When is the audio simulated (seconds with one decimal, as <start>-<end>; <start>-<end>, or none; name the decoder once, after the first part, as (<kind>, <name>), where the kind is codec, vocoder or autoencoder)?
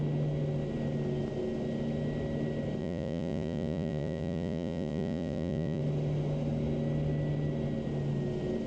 2.8-5.8 (vocoder, Vocos)